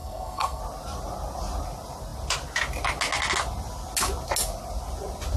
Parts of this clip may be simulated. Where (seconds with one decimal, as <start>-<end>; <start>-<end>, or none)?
0.0-0.6